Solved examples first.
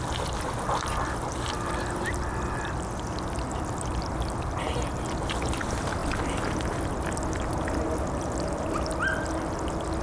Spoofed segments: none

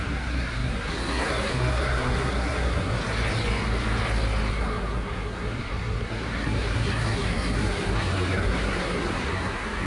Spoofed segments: 0.0-2.9 (codec, SNAC); 4.5-9.9

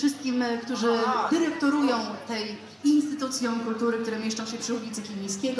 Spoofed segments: none

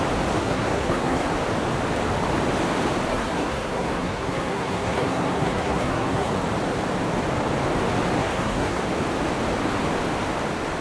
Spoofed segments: 0.4-1.3 (codec, SNAC); 3.1-6.3; 8.2-8.8